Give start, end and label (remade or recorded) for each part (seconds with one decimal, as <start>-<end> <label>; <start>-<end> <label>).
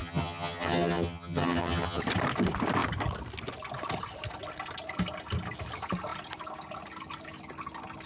0.0-2.0 remade; 2.0-8.1 recorded